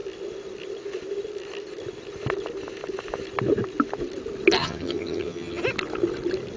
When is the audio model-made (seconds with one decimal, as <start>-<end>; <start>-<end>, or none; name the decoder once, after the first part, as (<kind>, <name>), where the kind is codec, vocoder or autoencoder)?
4.6-5.6 (vocoder, HiFi-GAN)